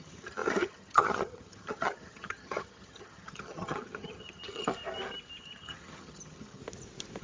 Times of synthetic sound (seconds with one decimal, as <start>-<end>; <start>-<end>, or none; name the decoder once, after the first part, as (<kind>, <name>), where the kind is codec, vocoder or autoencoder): 0.0-4.7 (vocoder, HiFi-GAN); 5.4-6.6